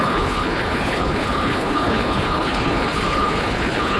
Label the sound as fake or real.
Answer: fake